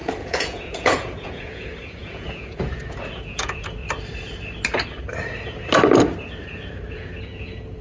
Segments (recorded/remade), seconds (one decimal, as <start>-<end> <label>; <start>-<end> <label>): 0.0-3.8 remade; 3.8-6.9 recorded; 6.9-7.8 remade